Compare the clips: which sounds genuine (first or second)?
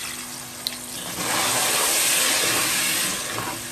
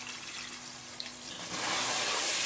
first